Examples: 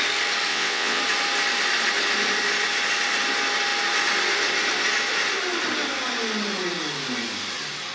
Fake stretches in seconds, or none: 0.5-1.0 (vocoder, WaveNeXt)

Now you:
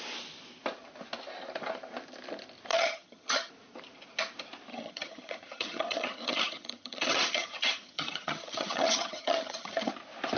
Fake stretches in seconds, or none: 2.7-3.5 (vocoder, HiFi-GAN); 4.7-9.9

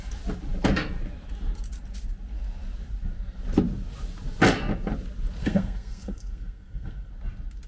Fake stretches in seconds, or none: 5.4-7.1 (codec, SNAC)

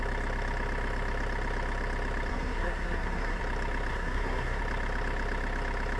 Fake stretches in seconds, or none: 2.3-3.4 (codec, SNAC); 3.9-4.6

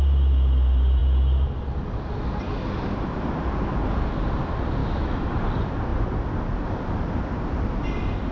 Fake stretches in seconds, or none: 4.8-5.3 (autoencoder, DAC-VAE)

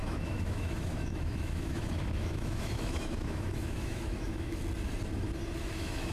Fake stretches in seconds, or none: 0.0-4.6 (autoencoder, DAC-VAE); 5.6-6.1